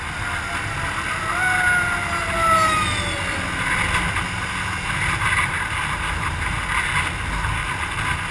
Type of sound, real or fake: real